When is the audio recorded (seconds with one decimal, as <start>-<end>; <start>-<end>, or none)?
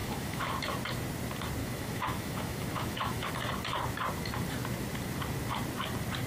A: 0.6-1.6; 3.3-6.3